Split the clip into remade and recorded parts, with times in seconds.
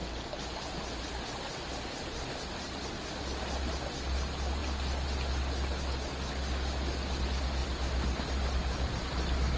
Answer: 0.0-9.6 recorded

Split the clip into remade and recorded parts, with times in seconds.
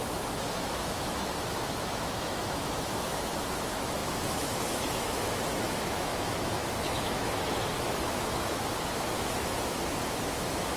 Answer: 0.0-10.8 remade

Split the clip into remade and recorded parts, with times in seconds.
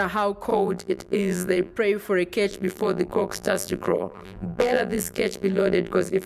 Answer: 0.0-0.5 recorded; 0.5-1.7 remade; 1.7-2.5 recorded; 2.5-6.3 remade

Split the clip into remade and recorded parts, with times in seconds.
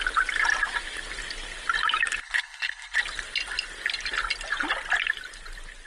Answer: 0.0-2.2 recorded; 2.2-3.0 remade; 3.0-5.9 recorded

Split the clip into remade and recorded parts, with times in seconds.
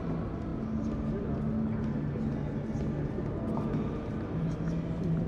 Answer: 0.0-5.3 recorded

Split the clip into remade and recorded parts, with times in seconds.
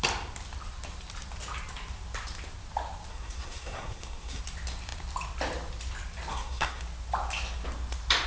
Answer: 0.0-3.1 recorded; 3.1-4.4 remade; 4.4-6.3 recorded; 6.3-6.8 remade; 6.8-8.3 recorded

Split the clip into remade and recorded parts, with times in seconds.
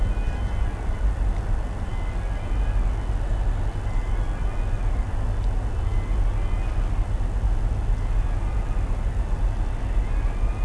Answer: 0.0-10.6 recorded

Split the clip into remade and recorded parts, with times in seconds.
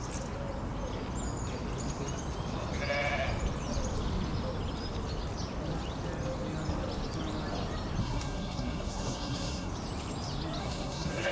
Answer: 0.0-8.0 recorded; 8.0-9.7 remade; 9.7-10.6 recorded; 10.6-11.3 remade